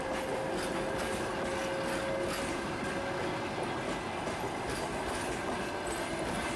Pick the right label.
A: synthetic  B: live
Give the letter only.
B